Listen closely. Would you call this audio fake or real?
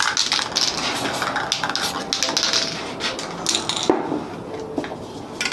real